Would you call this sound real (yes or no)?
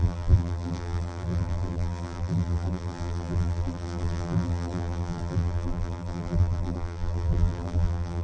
no